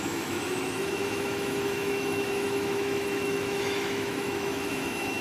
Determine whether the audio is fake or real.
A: fake